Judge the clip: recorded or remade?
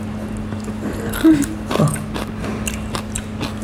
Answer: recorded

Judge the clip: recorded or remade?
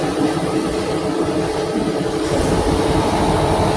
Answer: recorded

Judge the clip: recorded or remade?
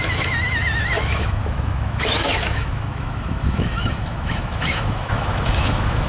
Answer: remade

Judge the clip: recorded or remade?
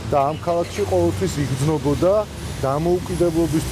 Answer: recorded